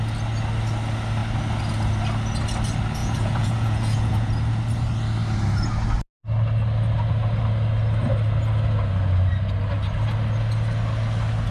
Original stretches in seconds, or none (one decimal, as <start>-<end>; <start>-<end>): 0.0-3.0; 4.3-11.5